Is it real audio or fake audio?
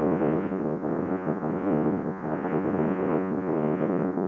fake